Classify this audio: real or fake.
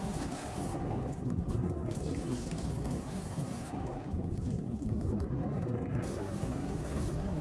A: fake